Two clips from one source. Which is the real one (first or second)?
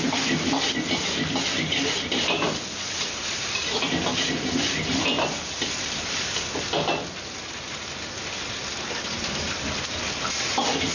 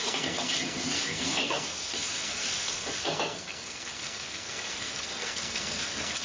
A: first